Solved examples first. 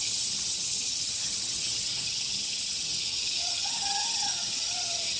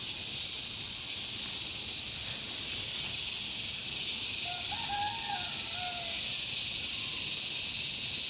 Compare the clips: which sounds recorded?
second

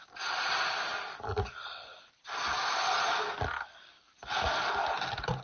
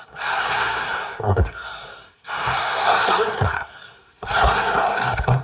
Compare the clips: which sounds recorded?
first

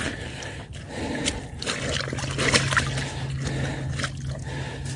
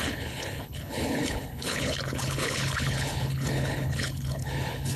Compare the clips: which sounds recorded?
first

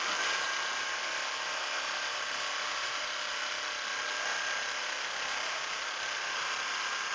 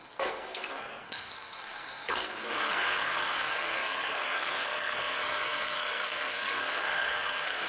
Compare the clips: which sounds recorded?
first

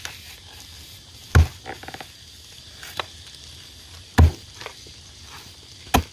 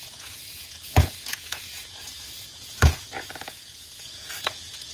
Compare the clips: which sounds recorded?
first